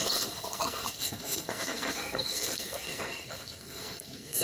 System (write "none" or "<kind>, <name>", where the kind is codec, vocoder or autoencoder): codec, SNAC